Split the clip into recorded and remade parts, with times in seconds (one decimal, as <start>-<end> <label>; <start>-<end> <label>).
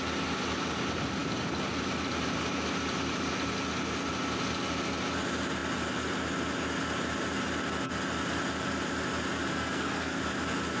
0.0-9.5 recorded; 9.5-10.2 remade; 10.2-10.8 recorded